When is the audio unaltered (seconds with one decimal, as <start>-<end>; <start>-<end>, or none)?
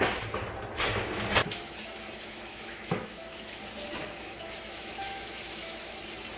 0.0-1.4; 3.6-4.0; 6.0-6.4